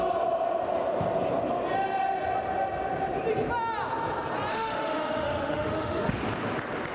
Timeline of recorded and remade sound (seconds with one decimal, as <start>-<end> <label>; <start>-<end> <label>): 0.0-4.5 recorded; 4.5-6.2 remade; 6.2-6.9 recorded